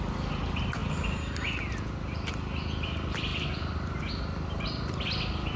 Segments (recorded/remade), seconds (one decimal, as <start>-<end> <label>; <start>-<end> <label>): 0.0-3.3 recorded; 3.3-4.0 remade; 4.0-5.6 recorded